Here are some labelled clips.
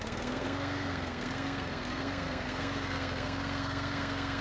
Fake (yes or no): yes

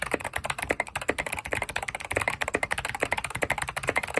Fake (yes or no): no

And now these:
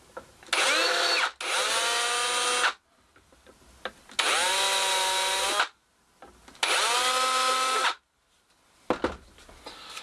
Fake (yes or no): no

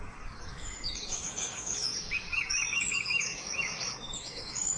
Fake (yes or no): yes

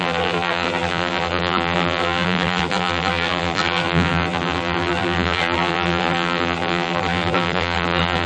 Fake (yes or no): yes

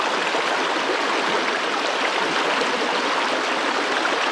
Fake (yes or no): no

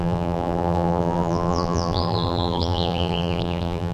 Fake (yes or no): yes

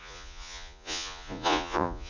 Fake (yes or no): yes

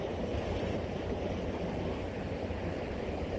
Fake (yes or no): no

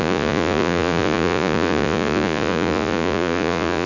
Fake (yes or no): yes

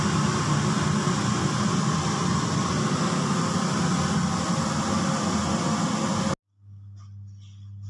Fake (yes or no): no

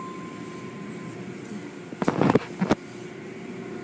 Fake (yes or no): no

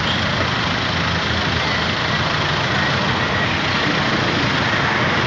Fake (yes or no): no